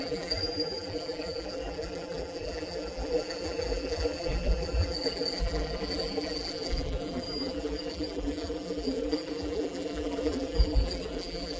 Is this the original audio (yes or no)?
no